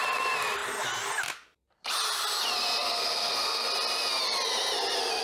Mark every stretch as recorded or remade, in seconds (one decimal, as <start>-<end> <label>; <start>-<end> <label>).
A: 0.0-2.8 recorded; 2.8-3.7 remade; 3.7-5.2 recorded

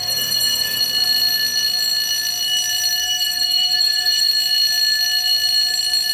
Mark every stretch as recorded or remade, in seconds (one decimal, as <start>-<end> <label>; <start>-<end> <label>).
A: 0.0-0.8 remade; 0.8-3.0 recorded; 3.0-4.3 remade; 4.3-6.1 recorded

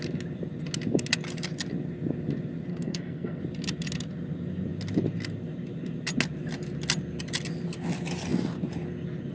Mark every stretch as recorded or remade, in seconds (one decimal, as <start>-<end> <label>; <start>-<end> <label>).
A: 0.0-2.7 recorded; 2.7-3.4 remade; 3.4-9.3 recorded